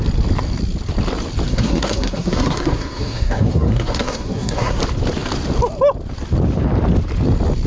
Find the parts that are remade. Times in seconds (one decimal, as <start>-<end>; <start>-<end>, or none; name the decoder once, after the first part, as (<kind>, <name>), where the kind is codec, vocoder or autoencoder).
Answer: 1.5-4.8 (codec, SNAC)